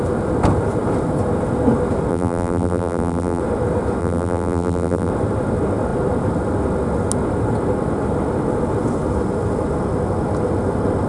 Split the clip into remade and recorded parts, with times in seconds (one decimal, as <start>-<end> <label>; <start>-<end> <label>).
0.0-2.1 recorded; 2.1-3.4 remade; 3.4-4.0 recorded; 4.0-5.1 remade; 5.1-11.1 recorded